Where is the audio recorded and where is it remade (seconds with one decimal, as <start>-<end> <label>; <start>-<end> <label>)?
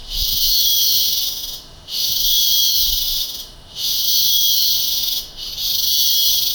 0.0-5.5 remade; 5.5-6.5 recorded